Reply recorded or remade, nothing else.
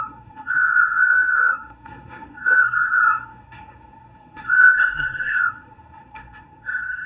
remade